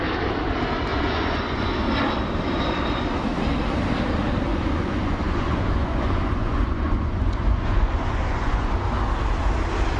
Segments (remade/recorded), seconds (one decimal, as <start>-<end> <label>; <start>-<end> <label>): 0.0-0.9 recorded; 0.9-1.7 remade; 1.7-4.5 recorded; 4.5-8.7 remade; 8.7-10.0 recorded